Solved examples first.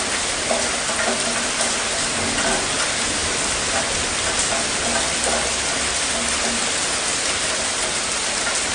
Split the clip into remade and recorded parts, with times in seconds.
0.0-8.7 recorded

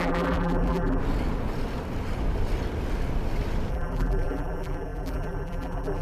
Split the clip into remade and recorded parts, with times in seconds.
0.0-1.0 remade; 1.0-3.7 recorded; 3.7-6.0 remade

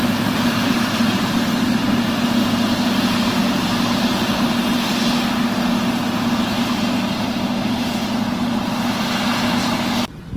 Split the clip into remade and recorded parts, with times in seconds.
0.0-2.1 remade; 2.1-10.4 recorded

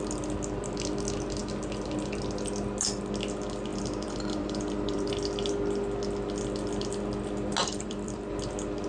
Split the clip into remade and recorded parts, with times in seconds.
0.0-3.7 recorded; 3.7-5.1 remade; 5.1-7.6 recorded; 7.6-8.3 remade; 8.3-8.9 recorded

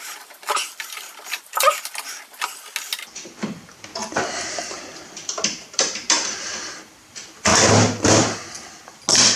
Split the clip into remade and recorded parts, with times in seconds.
0.0-4.9 recorded; 4.9-6.3 remade; 6.3-7.5 recorded; 7.5-8.4 remade; 8.4-9.4 recorded

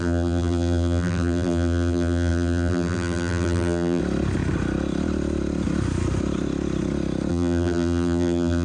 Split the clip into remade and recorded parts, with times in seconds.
0.0-4.0 remade; 4.0-7.3 recorded; 7.3-8.6 remade

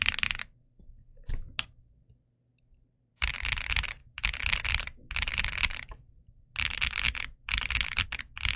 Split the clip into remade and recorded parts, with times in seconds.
0.0-2.5 recorded; 2.5-3.3 remade; 3.3-8.6 recorded